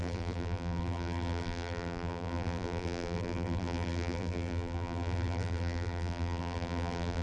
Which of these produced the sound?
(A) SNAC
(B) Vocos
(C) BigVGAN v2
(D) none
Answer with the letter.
C